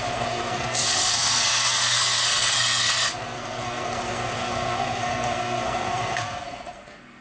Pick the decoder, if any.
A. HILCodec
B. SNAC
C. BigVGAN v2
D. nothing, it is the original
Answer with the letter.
B